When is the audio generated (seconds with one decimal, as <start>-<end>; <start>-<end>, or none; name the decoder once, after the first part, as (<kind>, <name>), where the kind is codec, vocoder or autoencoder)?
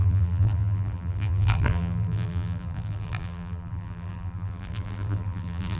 0.0-5.8 (vocoder, BigVGAN v2)